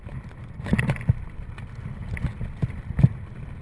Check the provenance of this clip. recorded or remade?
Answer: recorded